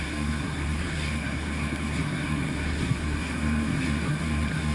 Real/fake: fake